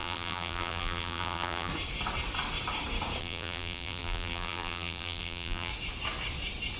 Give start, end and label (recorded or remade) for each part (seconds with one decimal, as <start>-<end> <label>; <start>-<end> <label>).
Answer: 0.0-1.7 remade; 1.7-3.2 recorded; 3.2-5.7 remade; 5.7-6.8 recorded

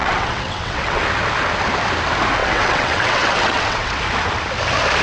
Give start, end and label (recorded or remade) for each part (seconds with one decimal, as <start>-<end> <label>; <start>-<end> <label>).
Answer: 0.0-1.0 remade; 1.0-2.4 recorded; 2.4-4.0 remade; 4.0-5.0 recorded